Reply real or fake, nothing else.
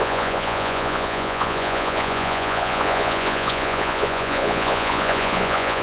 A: fake